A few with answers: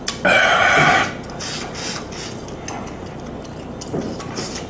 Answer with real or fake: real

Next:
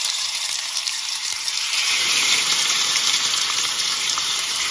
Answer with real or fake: fake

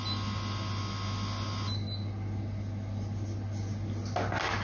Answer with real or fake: real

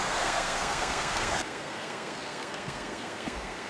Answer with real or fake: fake